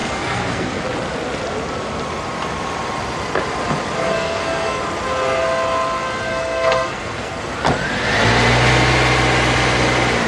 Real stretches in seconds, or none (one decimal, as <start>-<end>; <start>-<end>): 0.8-4.0; 4.8-6.3; 7.4-10.3